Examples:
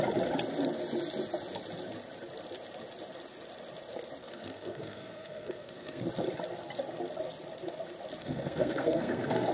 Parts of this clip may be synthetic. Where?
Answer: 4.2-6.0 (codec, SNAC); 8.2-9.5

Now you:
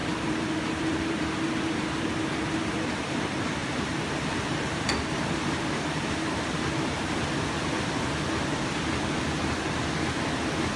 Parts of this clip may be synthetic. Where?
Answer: 0.0-2.0 (vocoder, BigVGAN v2); 3.6-6.6